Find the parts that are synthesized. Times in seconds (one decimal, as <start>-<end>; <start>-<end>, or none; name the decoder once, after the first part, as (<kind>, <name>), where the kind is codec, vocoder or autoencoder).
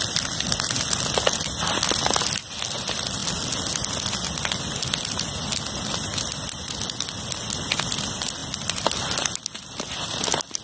none